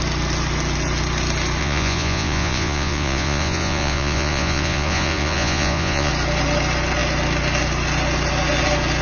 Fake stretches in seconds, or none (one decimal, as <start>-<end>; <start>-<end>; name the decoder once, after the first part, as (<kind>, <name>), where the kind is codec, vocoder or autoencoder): 1.6-6.1 (vocoder, Vocos)